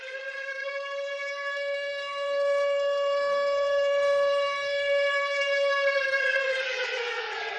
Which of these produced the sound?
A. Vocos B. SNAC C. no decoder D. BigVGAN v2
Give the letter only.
B